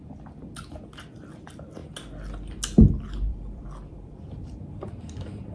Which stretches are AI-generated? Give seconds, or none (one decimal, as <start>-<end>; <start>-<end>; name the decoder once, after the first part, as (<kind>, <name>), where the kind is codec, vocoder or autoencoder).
3.3-4.6 (vocoder, BigVGAN v2)